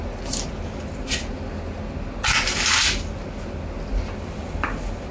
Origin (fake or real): real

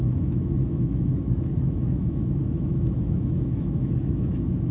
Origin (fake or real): fake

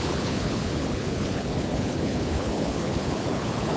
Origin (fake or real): fake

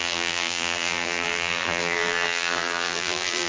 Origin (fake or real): fake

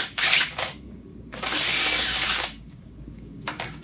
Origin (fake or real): fake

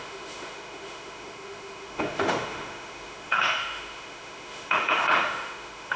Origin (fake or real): fake